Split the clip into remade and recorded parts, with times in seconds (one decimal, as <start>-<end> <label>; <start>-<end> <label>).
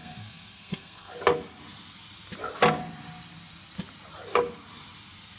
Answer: 0.0-1.1 remade; 1.1-5.4 recorded